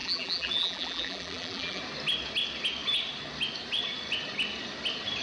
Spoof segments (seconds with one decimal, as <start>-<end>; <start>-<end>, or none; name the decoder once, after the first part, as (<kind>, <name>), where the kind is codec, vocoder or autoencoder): 0.0-1.8 (vocoder, BigVGAN v2)